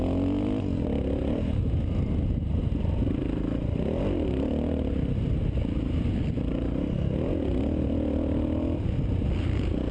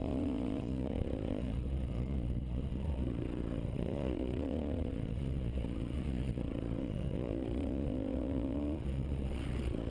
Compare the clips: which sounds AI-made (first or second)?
second